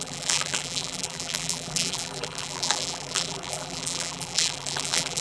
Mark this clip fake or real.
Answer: fake